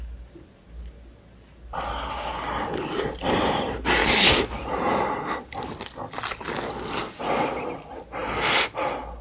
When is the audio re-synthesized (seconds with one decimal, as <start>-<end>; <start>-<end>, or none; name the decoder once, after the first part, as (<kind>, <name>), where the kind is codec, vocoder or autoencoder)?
none